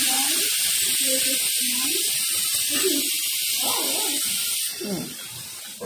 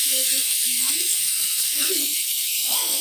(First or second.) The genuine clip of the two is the first